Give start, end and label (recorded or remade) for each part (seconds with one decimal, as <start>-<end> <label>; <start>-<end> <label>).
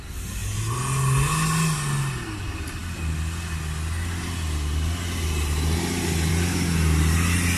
0.0-7.6 recorded